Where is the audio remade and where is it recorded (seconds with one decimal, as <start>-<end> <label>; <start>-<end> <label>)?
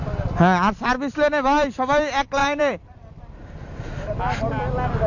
0.0-2.4 recorded; 2.4-3.4 remade; 3.4-5.1 recorded